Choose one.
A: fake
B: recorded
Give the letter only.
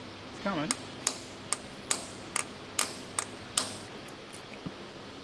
B